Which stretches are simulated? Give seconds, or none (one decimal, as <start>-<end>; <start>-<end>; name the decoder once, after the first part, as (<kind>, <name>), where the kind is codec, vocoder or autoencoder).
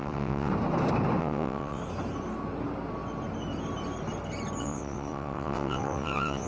0.0-0.5 (vocoder, WaveNeXt); 1.2-1.8; 4.6-6.5